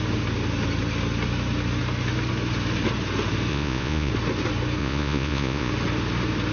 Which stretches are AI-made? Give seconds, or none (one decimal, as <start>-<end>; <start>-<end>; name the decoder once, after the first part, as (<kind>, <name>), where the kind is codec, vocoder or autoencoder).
3.5-4.1 (vocoder, Vocos); 4.8-5.7